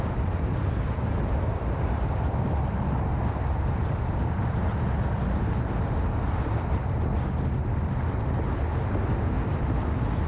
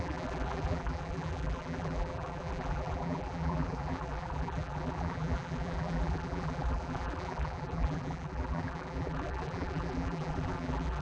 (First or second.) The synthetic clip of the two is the second